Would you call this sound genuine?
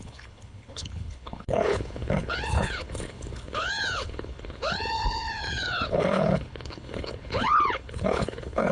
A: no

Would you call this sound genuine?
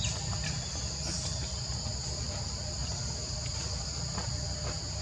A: yes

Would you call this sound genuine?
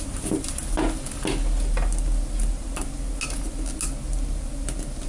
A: yes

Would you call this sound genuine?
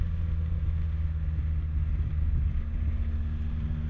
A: yes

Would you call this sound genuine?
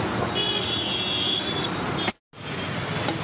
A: yes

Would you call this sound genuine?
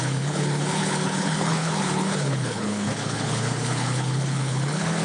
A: no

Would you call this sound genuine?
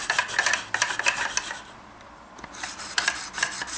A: yes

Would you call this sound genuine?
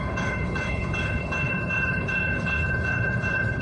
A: no